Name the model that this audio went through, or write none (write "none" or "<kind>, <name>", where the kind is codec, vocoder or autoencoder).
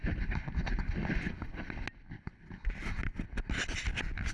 none